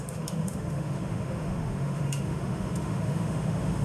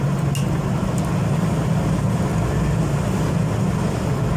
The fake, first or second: first